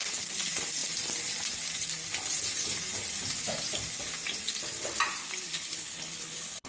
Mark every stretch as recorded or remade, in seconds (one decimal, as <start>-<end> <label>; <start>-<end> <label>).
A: 0.0-5.2 recorded; 5.2-6.7 remade